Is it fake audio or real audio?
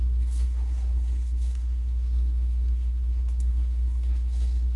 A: fake